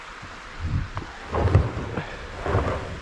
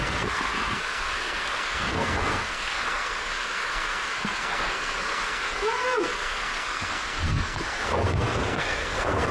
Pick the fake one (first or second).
second